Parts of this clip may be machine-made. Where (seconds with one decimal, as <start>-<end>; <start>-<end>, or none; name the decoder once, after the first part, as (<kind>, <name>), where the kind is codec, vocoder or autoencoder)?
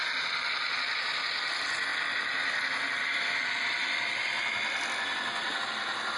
none